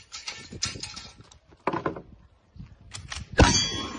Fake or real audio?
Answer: real